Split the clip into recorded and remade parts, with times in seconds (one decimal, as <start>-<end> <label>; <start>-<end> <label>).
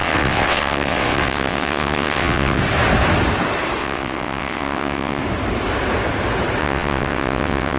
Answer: 0.0-2.6 remade; 2.6-3.8 recorded; 3.8-5.2 remade; 5.2-6.6 recorded; 6.6-7.8 remade